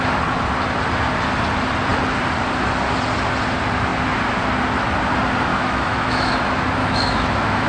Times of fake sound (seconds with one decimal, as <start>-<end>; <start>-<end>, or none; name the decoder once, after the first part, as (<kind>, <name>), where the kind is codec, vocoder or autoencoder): 5.5-6.3 (autoencoder, DAC-VAE); 6.8-7.7